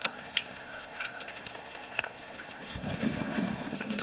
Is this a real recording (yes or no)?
no